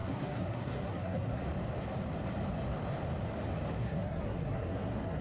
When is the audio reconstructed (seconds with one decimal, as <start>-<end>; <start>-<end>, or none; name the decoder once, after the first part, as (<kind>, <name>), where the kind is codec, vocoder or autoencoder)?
0.0-1.4 (codec, SNAC); 3.7-5.2